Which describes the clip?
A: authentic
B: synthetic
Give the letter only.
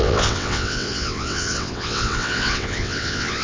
B